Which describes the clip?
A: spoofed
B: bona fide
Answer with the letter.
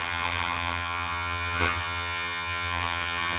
A